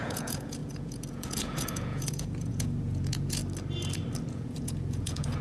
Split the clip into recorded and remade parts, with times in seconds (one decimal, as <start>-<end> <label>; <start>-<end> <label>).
0.0-3.4 remade; 3.4-4.3 recorded; 4.3-5.4 remade